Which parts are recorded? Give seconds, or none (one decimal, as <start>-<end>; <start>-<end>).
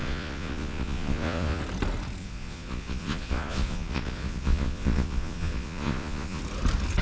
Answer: 1.6-2.2; 6.4-7.0